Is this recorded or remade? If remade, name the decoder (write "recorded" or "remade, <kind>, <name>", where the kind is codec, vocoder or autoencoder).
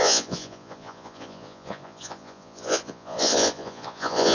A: remade, vocoder, Vocos